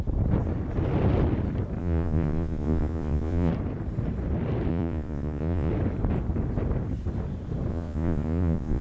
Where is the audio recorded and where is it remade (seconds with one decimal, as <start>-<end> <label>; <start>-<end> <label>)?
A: 0.0-1.8 recorded; 1.8-3.5 remade; 3.5-4.7 recorded; 4.7-5.7 remade; 5.7-7.7 recorded; 7.7-8.8 remade